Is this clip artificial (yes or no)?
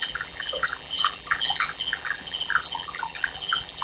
yes